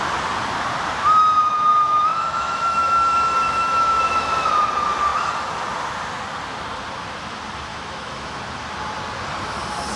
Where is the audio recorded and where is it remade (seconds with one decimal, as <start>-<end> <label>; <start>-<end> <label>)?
0.0-1.7 recorded; 1.7-4.5 remade; 4.5-7.7 recorded; 7.7-8.4 remade; 8.4-10.0 recorded